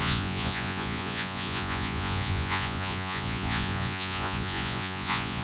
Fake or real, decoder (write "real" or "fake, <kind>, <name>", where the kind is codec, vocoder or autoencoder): fake, vocoder, Vocos